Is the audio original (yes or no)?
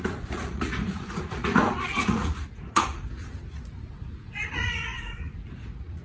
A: no